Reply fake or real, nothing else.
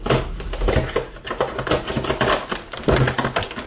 real